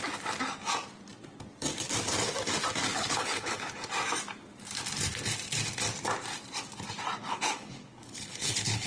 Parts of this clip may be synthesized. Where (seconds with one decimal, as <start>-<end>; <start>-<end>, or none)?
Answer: 2.9-3.8; 7.2-8.9